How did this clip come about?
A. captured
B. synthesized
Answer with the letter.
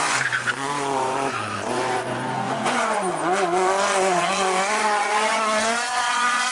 B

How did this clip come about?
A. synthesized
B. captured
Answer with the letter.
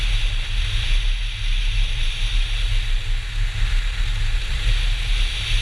B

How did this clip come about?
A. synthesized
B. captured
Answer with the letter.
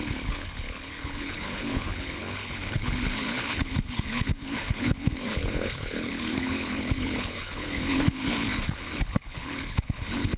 A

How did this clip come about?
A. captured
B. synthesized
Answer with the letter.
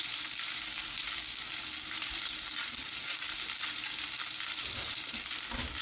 B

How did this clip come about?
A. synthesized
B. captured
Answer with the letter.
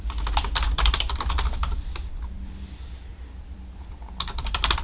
A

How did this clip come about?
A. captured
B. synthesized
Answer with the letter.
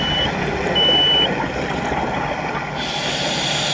A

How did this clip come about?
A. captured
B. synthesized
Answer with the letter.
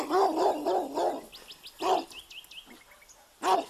A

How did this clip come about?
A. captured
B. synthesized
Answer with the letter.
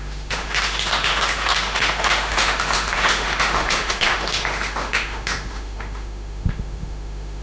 B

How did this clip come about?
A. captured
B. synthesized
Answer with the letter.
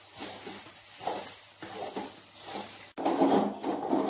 A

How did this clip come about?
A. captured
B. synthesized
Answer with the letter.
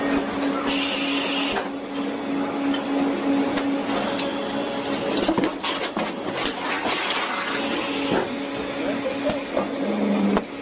A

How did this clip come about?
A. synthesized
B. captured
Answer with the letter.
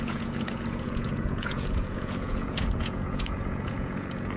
A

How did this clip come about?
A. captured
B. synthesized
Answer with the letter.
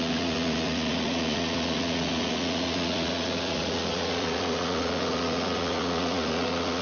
B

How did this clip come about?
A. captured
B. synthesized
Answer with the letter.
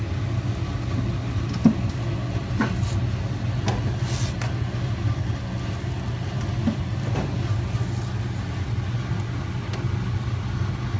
A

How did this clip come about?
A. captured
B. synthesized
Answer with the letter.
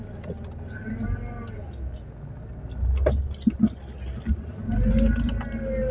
A